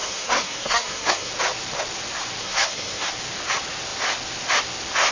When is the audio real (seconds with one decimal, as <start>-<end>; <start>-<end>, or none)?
1.3-2.4; 3.1-5.1